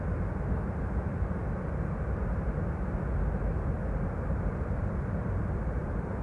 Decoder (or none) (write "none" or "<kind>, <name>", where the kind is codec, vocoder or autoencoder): none